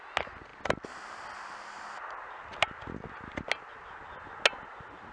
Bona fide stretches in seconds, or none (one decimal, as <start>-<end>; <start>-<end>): 0.0-5.1